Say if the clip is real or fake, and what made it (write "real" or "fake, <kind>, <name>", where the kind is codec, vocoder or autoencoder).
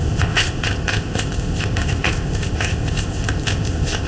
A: fake, codec, ZipCodec